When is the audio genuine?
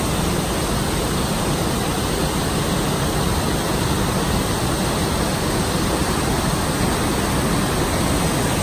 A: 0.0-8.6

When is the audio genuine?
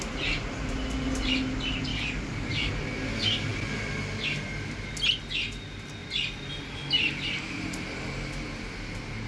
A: 0.0-1.9; 2.7-9.3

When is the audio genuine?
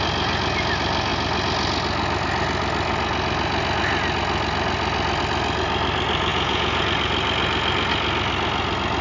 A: 0.0-6.3; 6.8-9.0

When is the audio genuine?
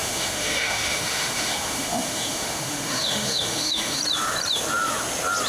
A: 4.0-5.5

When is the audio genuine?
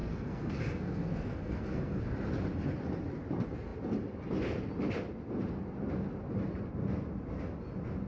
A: 2.0-8.1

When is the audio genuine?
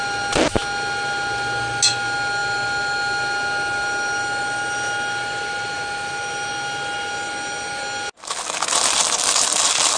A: 0.0-10.0